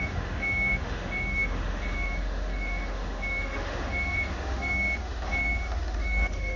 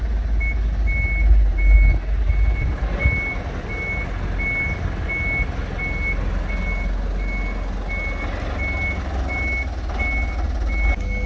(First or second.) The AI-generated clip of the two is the first